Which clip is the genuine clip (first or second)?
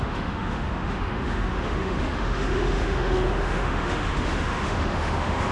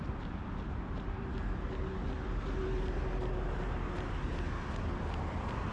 second